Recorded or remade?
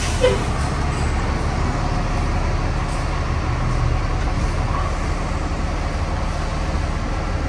recorded